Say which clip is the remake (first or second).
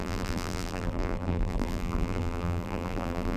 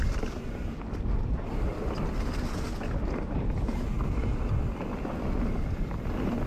first